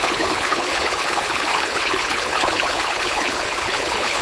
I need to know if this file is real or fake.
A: fake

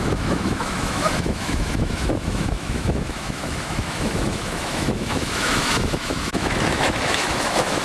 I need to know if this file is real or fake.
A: fake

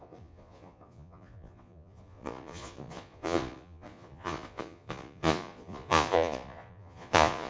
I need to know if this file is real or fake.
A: fake